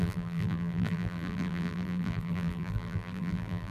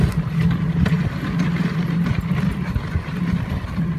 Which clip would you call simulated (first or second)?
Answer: first